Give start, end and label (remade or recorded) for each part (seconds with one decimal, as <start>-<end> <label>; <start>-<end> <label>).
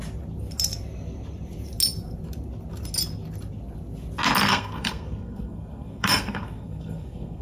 0.0-4.5 recorded; 4.5-7.4 remade